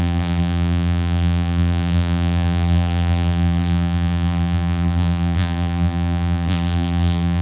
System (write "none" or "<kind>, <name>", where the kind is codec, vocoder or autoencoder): vocoder, BigVGAN v2